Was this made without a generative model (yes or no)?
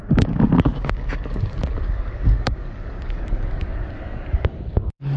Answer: no